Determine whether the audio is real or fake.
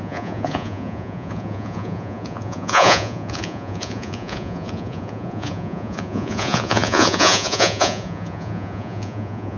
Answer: fake